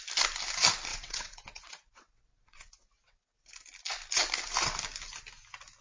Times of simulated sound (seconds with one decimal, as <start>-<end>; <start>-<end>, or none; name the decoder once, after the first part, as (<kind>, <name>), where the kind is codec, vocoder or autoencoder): 0.9-3.5 (vocoder, WaveNeXt)